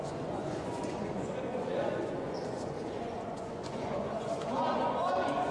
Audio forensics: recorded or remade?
remade